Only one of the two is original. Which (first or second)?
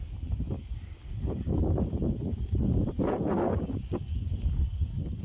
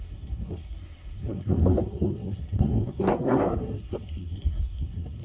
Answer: first